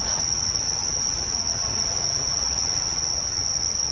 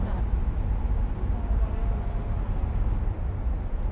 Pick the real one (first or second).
second